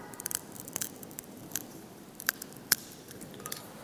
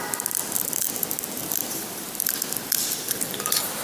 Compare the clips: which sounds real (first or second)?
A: second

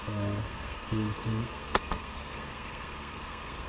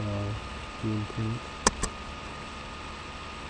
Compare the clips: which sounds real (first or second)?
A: second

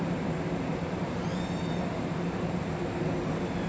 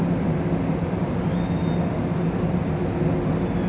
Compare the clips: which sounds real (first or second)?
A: second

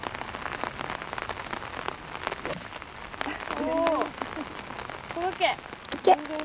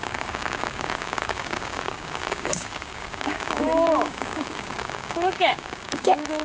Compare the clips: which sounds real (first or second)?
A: first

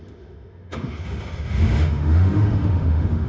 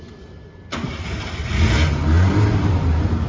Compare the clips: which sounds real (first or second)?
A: second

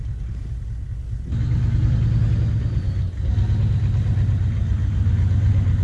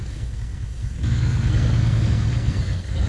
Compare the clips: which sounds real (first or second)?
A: first